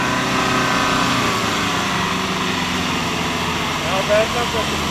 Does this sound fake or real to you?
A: real